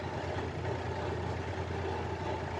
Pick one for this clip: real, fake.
real